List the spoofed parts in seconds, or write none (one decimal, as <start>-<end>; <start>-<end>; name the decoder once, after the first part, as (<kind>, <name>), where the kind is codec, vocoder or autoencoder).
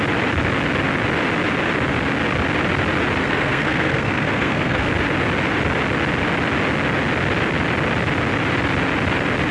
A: 3.2-4.9 (codec, SNAC)